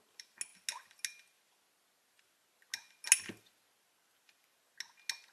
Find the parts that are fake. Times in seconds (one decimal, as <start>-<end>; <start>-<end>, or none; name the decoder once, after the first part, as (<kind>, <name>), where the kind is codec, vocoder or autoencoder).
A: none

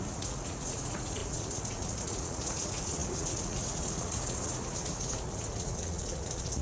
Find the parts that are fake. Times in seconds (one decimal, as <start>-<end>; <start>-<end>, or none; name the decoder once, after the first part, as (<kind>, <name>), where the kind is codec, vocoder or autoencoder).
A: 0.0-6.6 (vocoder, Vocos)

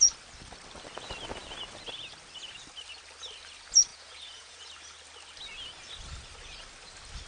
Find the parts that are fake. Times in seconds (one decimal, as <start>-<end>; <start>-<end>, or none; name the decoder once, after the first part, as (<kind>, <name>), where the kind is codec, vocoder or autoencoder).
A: 3.9-4.6 (vocoder, Vocos)